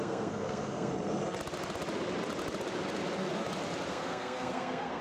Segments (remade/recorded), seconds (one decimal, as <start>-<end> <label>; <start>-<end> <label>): 0.0-0.9 remade; 0.9-3.9 recorded; 3.9-5.0 remade